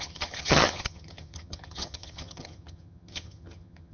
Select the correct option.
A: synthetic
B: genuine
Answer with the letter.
A